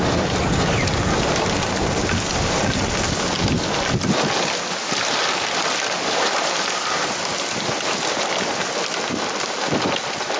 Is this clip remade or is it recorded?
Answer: recorded